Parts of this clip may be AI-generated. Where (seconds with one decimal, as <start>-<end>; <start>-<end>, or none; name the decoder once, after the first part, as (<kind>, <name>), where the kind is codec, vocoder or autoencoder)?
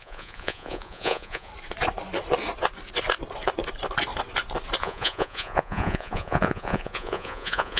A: 0.0-1.5 (vocoder, Vocos); 4.8-7.8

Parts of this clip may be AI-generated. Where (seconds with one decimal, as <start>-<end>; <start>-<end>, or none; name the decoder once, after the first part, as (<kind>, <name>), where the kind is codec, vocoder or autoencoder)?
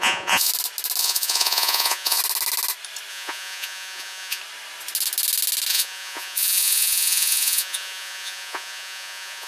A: 0.0-0.5 (vocoder, Vocos); 1.0-2.2; 3.1-4.4; 5.7-9.5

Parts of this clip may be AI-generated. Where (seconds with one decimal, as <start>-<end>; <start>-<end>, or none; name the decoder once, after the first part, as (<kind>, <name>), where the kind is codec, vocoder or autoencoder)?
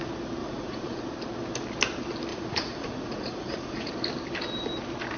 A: 0.4-1.0 (vocoder, Vocos); 2.3-3.9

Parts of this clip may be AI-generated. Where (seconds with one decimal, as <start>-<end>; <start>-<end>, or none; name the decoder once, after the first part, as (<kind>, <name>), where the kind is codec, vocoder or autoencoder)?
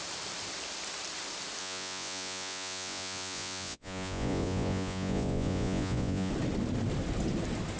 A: 1.6-6.3 (vocoder, Vocos)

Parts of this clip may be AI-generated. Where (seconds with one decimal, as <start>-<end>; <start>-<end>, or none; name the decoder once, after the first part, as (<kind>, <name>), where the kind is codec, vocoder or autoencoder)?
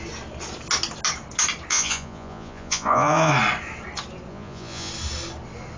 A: 1.7-3.3 (vocoder, Vocos); 4.3-4.9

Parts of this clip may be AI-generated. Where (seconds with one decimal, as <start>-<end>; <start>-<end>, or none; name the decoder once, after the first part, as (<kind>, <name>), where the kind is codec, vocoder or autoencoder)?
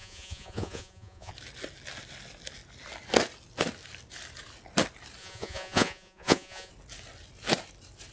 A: 0.0-1.3 (vocoder, Vocos); 5.2-6.7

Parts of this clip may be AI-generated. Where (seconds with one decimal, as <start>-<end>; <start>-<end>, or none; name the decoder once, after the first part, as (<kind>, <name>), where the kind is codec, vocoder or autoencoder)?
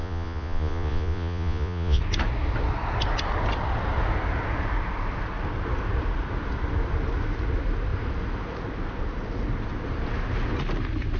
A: 0.0-2.0 (vocoder, Vocos)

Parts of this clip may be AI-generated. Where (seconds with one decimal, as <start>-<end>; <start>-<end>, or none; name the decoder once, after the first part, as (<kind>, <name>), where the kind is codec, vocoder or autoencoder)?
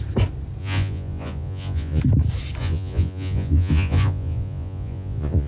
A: 0.6-2.0 (vocoder, Vocos); 2.6-5.5